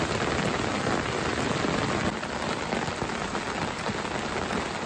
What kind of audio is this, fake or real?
real